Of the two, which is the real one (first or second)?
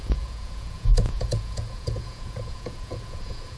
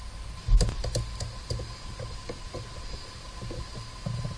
second